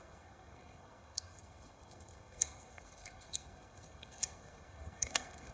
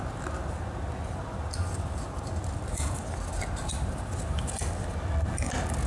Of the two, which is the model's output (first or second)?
first